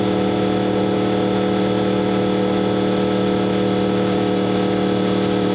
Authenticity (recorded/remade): recorded